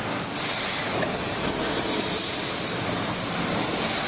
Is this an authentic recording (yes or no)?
yes